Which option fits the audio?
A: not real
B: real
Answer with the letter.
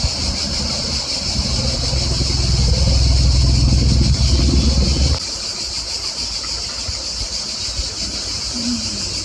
B